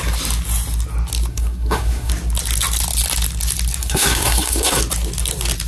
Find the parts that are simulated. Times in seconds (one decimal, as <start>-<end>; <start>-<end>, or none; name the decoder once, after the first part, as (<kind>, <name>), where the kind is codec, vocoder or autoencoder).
1.3-2.1 (codec, SNAC); 3.8-4.8